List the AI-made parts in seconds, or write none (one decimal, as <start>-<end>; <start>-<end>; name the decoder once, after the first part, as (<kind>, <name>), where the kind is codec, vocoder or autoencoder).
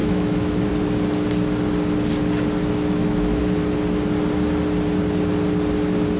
0.0-0.7 (autoencoder, DAC-VAE); 2.6-3.4